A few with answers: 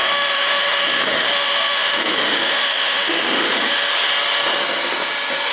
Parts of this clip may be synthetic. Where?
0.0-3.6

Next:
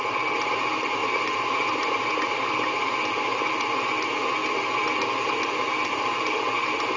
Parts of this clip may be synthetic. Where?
none

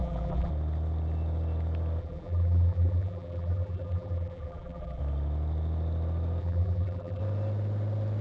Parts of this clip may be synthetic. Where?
0.0-0.5; 2.0-5.0; 6.4-7.2